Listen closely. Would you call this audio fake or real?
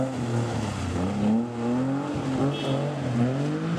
real